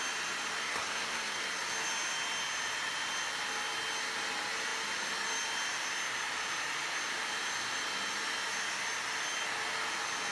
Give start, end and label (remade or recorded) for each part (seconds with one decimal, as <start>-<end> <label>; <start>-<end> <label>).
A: 0.0-0.6 recorded; 0.6-1.4 remade; 1.4-10.3 recorded